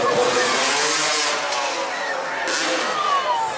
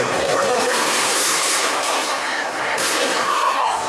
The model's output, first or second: second